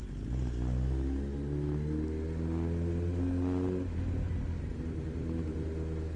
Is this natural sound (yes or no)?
yes